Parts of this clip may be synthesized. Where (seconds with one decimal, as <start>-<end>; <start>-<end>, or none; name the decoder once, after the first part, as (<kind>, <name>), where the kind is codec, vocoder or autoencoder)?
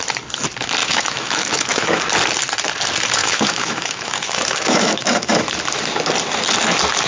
0.8-2.0 (autoencoder, DAC-VAE); 3.2-5.5